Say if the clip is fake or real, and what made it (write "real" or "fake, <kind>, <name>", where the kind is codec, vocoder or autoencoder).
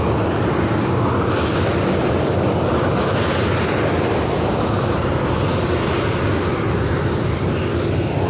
real